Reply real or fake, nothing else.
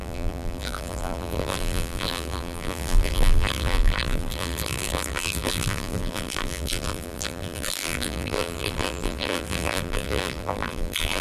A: fake